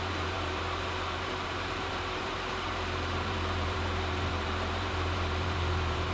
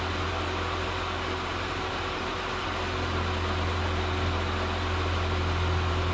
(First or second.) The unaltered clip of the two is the second